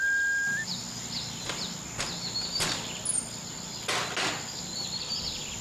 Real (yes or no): yes